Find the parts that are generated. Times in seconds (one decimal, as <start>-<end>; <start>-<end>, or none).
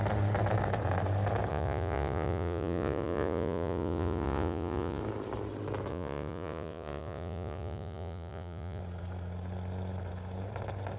1.5-5.0; 5.9-8.8